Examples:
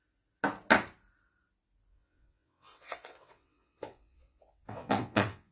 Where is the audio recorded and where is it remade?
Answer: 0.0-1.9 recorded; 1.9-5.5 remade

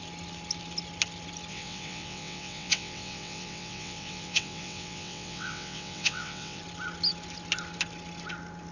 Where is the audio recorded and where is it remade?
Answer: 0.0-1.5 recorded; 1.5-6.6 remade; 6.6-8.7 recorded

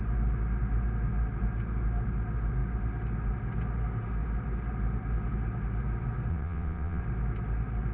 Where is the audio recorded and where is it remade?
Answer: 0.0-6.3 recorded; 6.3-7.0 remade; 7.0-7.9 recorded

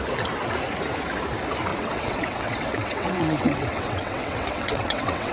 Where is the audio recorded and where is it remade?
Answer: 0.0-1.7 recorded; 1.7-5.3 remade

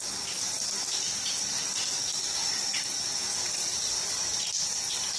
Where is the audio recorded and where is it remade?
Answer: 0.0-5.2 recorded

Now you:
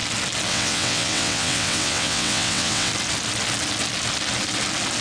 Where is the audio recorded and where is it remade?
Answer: 0.0-0.5 recorded; 0.5-2.9 remade; 2.9-5.0 recorded